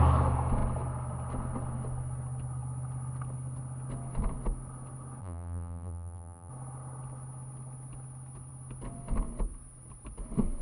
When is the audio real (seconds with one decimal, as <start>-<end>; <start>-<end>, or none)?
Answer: 0.0-5.2; 6.5-10.6